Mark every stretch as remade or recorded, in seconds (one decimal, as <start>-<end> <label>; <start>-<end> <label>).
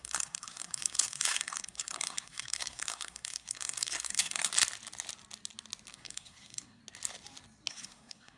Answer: 0.0-4.5 remade; 4.5-5.9 recorded; 5.9-6.8 remade; 6.8-7.7 recorded; 7.7-8.4 remade